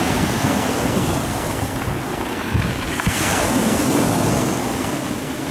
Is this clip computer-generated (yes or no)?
yes